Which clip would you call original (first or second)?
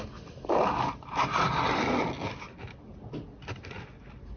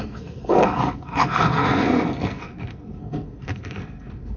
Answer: first